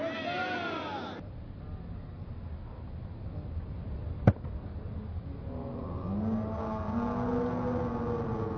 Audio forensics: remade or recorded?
recorded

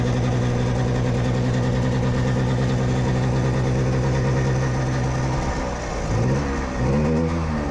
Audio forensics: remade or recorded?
recorded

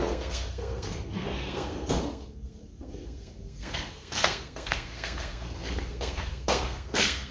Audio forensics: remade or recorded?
remade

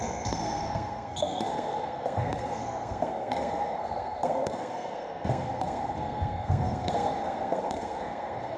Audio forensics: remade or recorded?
remade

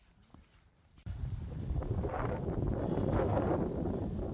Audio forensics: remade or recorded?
recorded